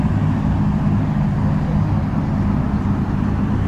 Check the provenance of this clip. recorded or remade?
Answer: recorded